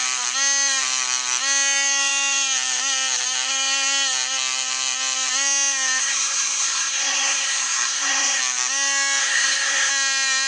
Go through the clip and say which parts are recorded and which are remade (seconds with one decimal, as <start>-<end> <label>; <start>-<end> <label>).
0.0-6.0 recorded; 6.0-8.4 remade; 8.4-9.2 recorded; 9.2-9.9 remade; 9.9-10.5 recorded